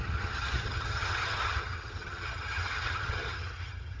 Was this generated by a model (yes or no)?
yes